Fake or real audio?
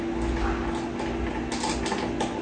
real